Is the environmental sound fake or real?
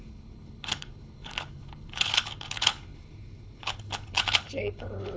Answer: fake